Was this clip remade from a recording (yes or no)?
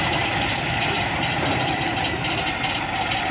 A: no